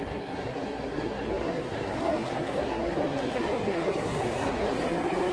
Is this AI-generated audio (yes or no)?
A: yes